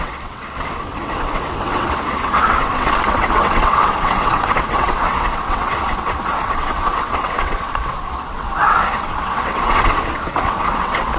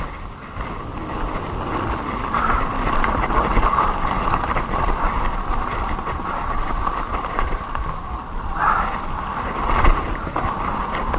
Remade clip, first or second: first